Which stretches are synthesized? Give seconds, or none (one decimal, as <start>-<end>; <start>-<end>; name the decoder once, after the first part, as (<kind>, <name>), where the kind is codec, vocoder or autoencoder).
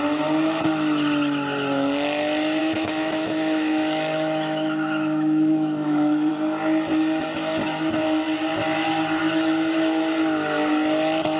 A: 2.6-6.3 (autoencoder, DAC-VAE)